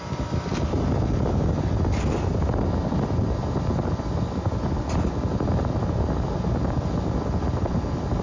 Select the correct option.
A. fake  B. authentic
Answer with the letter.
B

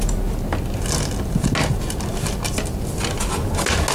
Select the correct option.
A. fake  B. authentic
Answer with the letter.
B